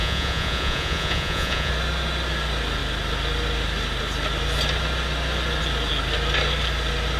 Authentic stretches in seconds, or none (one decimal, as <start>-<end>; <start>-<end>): 1.7-7.2